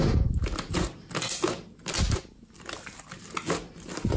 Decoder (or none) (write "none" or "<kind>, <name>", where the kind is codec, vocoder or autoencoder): none